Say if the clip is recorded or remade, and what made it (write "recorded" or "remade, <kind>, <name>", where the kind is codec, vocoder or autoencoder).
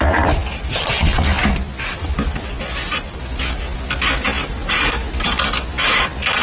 recorded